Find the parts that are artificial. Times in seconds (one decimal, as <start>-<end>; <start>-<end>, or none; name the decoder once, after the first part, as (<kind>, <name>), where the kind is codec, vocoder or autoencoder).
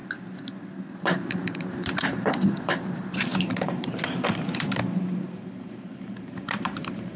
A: 0.9-7.2 (vocoder, BigVGAN v2)